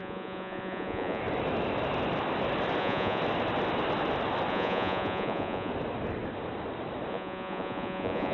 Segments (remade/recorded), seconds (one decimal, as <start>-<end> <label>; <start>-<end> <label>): 0.0-1.2 remade; 1.2-2.8 recorded; 2.8-3.2 remade; 3.2-4.5 recorded; 4.5-5.7 remade; 5.7-7.1 recorded; 7.1-8.3 remade